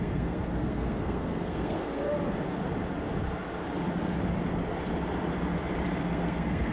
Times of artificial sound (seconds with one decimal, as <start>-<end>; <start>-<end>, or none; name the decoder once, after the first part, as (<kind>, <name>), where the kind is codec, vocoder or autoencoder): 0.0-2.1 (codec, SNAC); 6.0-6.7